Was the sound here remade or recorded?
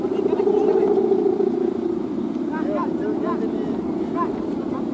recorded